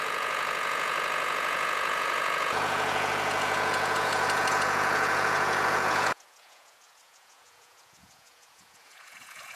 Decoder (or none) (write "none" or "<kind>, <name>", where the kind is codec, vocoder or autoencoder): vocoder, Vocos